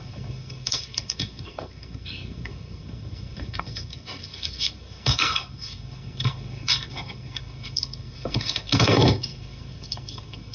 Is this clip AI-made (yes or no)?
yes